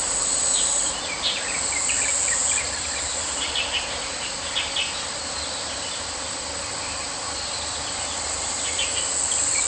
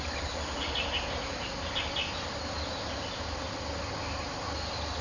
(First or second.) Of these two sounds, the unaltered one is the second